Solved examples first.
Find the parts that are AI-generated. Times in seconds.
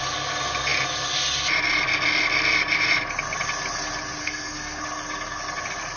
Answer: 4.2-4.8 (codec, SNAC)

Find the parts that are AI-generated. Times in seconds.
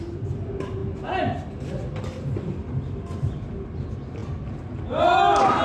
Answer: none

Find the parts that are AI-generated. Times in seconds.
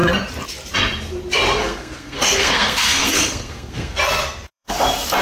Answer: 1.6-4.7 (codec, SNAC)